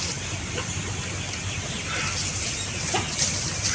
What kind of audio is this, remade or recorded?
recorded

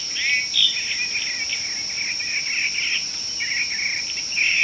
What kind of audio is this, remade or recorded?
recorded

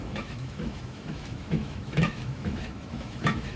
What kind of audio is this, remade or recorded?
remade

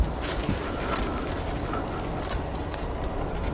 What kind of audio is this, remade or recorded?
recorded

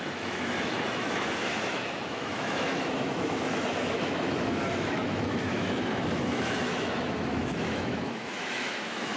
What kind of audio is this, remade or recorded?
remade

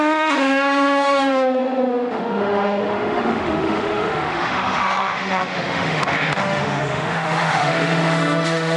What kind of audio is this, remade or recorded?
remade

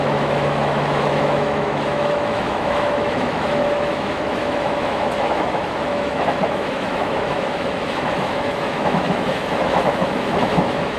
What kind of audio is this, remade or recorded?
remade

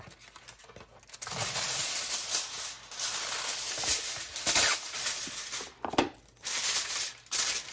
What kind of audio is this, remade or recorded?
recorded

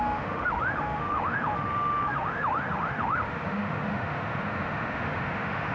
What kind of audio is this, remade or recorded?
remade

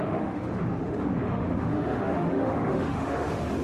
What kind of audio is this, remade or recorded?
remade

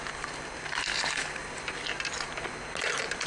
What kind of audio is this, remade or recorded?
recorded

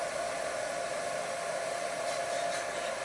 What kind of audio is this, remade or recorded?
recorded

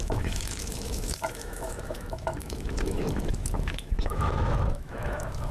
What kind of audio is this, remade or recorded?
remade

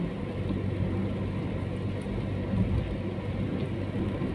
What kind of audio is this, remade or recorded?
recorded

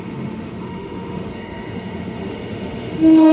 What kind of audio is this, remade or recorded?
remade